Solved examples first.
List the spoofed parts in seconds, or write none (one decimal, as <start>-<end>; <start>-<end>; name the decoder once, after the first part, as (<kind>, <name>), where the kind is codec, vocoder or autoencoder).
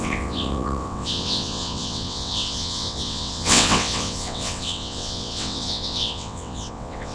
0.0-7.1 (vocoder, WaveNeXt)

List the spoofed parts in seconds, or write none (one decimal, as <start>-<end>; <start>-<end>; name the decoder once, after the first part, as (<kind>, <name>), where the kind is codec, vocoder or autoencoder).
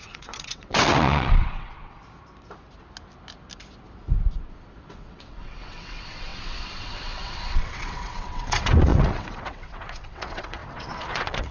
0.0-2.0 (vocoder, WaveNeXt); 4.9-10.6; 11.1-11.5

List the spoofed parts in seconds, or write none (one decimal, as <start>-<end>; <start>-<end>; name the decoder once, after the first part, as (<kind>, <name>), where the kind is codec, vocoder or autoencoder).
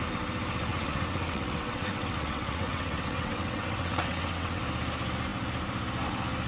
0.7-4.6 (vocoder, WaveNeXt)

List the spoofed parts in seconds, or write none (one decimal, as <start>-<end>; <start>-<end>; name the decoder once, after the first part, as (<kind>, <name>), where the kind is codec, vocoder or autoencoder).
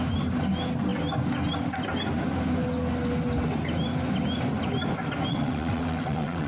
5.3-6.5 (vocoder, WaveNeXt)